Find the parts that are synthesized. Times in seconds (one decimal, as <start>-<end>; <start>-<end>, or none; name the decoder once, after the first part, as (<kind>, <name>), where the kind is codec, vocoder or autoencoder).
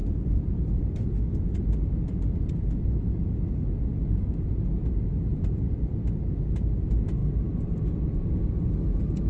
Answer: 0.0-1.6 (vocoder, BigVGAN v2); 5.3-5.8; 7.2-8.7